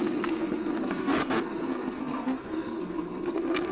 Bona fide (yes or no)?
no